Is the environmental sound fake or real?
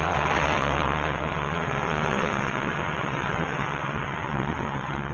fake